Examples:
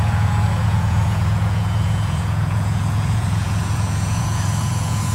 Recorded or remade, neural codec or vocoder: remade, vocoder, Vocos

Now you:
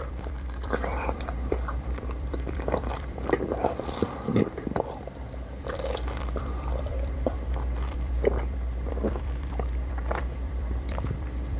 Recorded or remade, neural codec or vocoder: remade, vocoder, BigVGAN v2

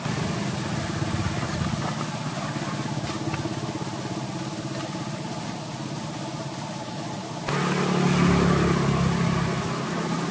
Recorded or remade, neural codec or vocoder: recorded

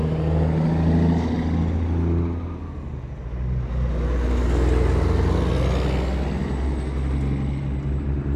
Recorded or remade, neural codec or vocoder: recorded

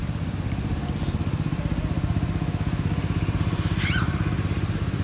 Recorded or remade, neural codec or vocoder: recorded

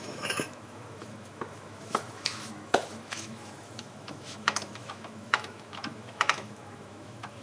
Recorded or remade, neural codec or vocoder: remade, autoencoder, DAC-VAE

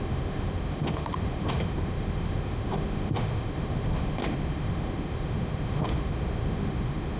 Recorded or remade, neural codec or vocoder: remade, autoencoder, DAC-VAE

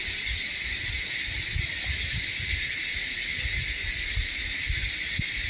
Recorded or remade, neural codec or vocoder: recorded